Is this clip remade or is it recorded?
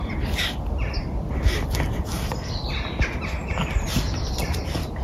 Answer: recorded